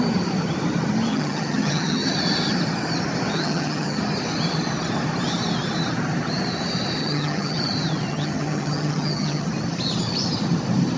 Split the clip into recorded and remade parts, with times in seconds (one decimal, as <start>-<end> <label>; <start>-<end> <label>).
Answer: 0.0-1.1 recorded; 1.1-2.1 remade; 2.1-3.3 recorded; 3.3-4.0 remade; 4.0-7.0 recorded; 7.0-7.6 remade; 7.6-8.1 recorded; 8.1-9.5 remade; 9.5-11.0 recorded